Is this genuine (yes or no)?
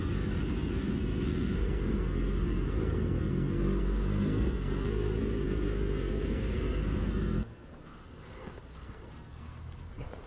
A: no